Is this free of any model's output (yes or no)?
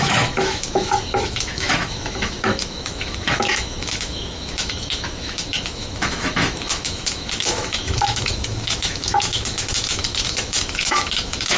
no